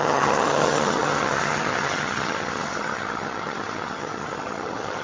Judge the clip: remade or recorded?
remade